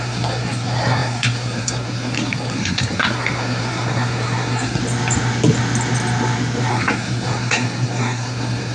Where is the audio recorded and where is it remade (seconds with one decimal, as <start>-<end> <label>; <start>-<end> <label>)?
0.0-4.8 remade; 4.8-6.7 recorded; 6.7-8.7 remade